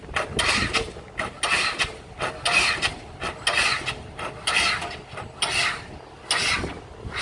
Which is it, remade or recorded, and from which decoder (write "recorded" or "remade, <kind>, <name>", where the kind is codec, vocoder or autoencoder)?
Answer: recorded